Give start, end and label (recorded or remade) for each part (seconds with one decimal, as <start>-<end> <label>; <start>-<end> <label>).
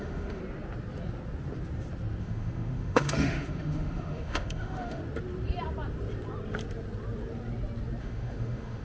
0.0-0.4 remade; 0.4-2.2 recorded; 2.2-5.0 remade; 5.0-8.0 recorded; 8.0-8.8 remade